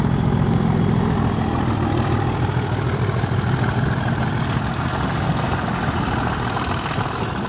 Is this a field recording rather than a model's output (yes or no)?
yes